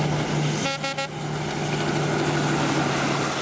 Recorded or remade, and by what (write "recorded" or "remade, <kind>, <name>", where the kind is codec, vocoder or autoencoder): recorded